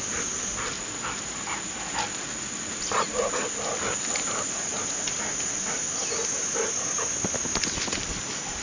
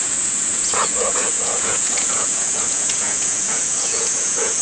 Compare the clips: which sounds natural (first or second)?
first